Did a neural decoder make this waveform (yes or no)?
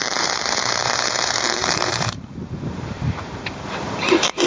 yes